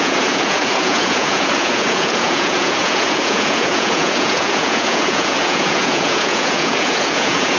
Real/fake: fake